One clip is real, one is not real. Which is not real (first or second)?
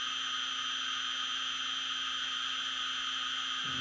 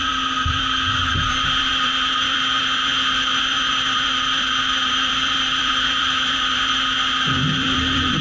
second